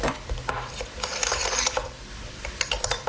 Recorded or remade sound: remade